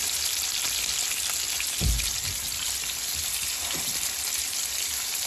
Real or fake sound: real